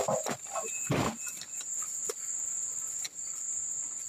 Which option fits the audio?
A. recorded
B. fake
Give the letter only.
A